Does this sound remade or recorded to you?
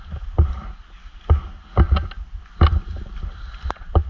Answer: recorded